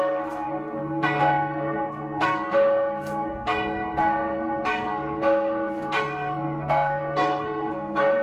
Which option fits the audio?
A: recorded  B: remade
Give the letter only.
B